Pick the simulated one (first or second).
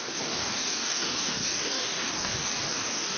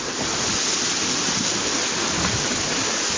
first